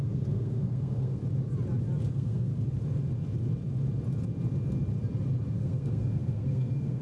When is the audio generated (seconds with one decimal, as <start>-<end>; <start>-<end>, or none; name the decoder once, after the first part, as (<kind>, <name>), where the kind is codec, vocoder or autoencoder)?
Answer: 0.0-1.2 (codec, SNAC); 2.1-2.5; 5.5-7.0